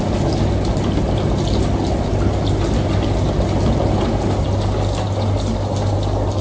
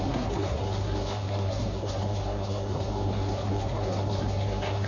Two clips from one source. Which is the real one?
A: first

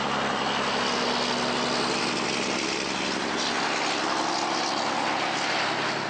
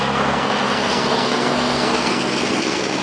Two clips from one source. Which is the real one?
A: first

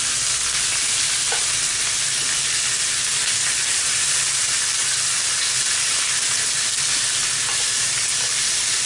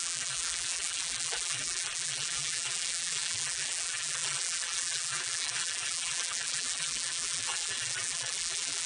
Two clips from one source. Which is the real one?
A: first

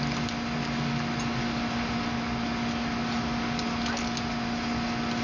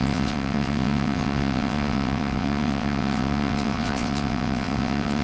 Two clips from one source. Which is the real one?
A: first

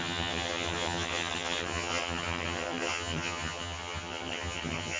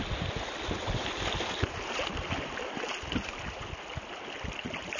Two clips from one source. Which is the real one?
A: second